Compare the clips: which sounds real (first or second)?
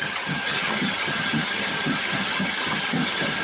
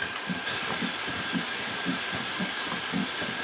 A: second